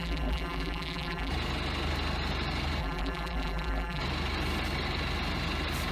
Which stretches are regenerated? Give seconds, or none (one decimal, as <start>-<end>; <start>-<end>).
0.0-1.3; 2.8-4.0